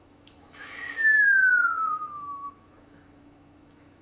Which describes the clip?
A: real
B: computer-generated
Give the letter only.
B